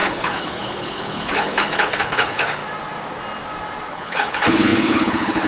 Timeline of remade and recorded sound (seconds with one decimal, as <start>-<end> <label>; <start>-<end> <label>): 0.0-2.6 remade; 2.6-3.9 recorded; 3.9-5.5 remade